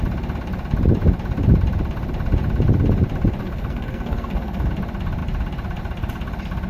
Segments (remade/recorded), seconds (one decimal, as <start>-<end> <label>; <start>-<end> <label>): 0.0-3.4 recorded; 3.4-4.7 remade; 4.7-6.7 recorded